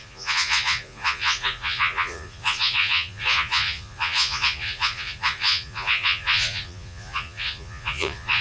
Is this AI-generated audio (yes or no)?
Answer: yes